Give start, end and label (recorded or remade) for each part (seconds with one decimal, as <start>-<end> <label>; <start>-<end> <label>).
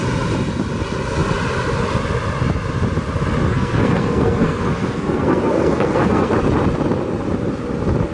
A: 0.0-3.5 recorded; 3.5-6.3 remade; 6.3-8.1 recorded